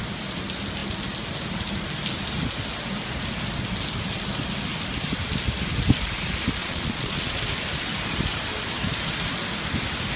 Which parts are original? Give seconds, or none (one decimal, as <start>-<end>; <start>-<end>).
0.0-6.6; 7.4-10.2